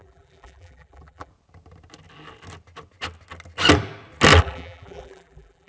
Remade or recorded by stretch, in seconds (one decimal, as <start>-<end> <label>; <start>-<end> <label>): 0.0-1.3 remade; 1.3-4.4 recorded; 4.4-5.7 remade

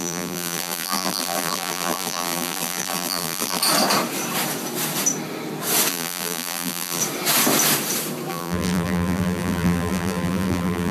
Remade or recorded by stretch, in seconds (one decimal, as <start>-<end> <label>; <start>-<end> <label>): 0.0-3.6 remade; 3.6-5.9 recorded; 5.9-7.0 remade; 7.0-8.3 recorded; 8.3-10.9 remade

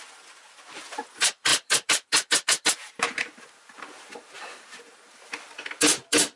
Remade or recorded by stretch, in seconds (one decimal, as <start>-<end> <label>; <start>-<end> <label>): 0.0-1.5 recorded; 1.5-5.3 remade; 5.3-6.4 recorded

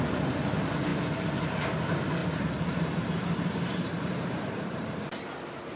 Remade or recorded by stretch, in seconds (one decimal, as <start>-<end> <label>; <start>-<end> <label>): 0.0-2.2 recorded; 2.2-5.0 remade; 5.0-5.8 recorded

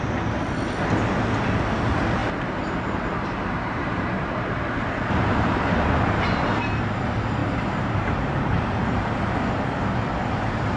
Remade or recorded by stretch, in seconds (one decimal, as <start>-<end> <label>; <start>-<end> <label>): 0.0-2.2 recorded; 2.2-5.9 remade; 5.9-7.4 recorded; 7.4-9.1 remade; 9.1-10.2 recorded; 10.2-10.8 remade

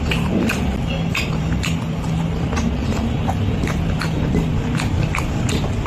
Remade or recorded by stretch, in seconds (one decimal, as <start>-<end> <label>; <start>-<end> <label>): 0.0-5.9 recorded

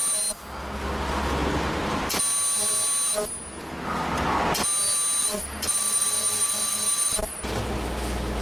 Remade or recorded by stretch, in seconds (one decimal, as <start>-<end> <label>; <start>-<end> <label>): 0.0-5.2 recorded; 5.2-7.4 remade; 7.4-8.4 recorded

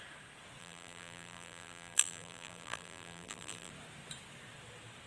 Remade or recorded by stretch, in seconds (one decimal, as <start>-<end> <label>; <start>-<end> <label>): 0.0-0.6 recorded; 0.6-3.7 remade; 3.7-5.1 recorded